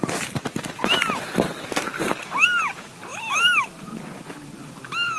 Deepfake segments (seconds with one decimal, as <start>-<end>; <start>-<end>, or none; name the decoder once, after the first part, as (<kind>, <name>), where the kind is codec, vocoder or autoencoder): 0.0-1.0 (vocoder, BigVGAN v2)